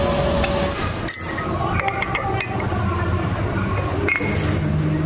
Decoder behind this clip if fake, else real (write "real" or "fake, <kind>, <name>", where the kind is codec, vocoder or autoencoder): real